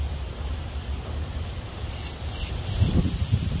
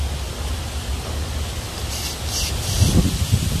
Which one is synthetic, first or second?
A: first